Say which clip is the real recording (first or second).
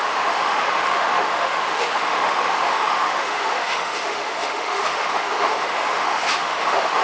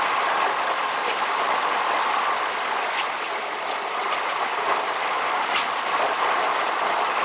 second